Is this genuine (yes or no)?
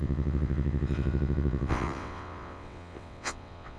no